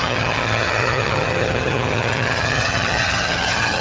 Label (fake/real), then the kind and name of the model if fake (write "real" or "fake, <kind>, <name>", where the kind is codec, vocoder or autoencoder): fake, vocoder, HiFi-GAN